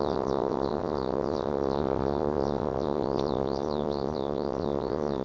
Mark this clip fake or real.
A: fake